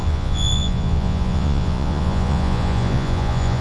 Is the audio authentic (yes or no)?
no